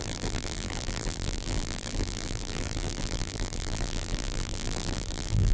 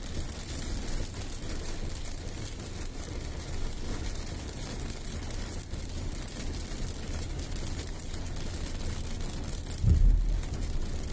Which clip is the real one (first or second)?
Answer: second